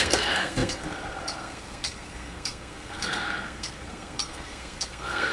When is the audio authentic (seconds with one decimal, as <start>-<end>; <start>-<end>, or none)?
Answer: none